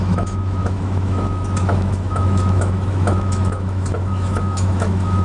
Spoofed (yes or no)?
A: yes